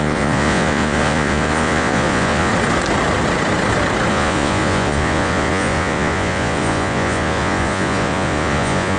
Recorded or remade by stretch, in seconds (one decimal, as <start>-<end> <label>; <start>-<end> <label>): 0.0-2.5 remade; 2.5-4.1 recorded; 4.1-9.0 remade